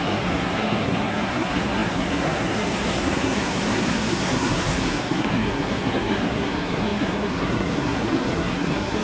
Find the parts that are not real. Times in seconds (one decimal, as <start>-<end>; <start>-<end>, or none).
0.0-9.0